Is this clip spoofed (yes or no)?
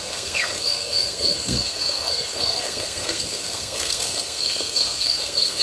yes